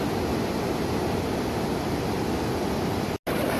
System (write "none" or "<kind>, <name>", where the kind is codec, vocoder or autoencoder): none